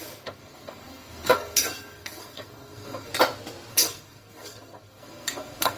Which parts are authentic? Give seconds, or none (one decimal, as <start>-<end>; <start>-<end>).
3.1-3.7